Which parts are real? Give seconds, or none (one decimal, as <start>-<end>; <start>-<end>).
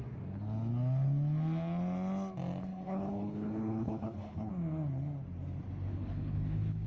0.0-2.7; 4.5-5.9